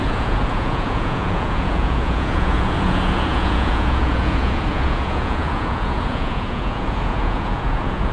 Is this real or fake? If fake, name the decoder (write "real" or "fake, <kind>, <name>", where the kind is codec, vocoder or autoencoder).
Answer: fake, vocoder, Vocos